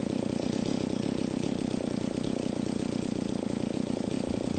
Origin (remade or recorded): recorded